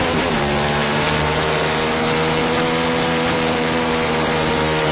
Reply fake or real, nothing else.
fake